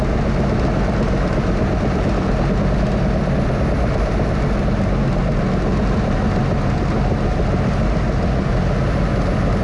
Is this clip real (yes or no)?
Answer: yes